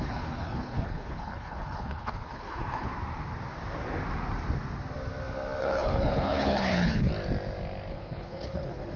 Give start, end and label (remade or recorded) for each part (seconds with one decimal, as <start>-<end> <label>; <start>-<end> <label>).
0.0-2.9 remade; 2.9-5.6 recorded; 5.6-7.1 remade; 7.1-7.9 recorded; 7.9-9.0 remade